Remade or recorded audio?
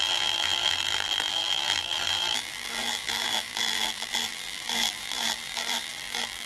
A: remade